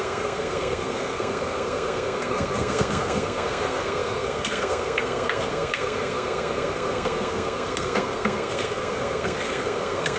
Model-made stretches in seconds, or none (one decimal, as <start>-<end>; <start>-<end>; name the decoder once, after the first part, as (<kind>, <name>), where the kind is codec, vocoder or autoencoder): 0.0-10.2 (codec, SNAC)